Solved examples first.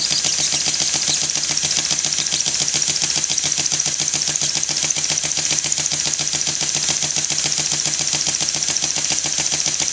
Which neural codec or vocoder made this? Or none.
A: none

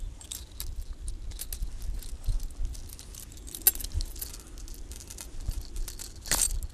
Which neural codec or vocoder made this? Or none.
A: none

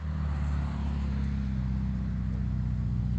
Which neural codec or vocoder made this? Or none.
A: none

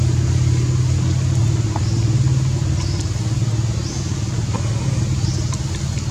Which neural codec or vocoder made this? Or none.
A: none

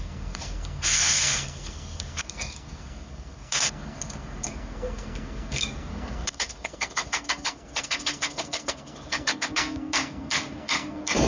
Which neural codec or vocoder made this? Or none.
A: codec, SNAC